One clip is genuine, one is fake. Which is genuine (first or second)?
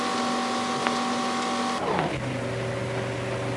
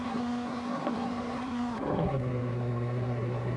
first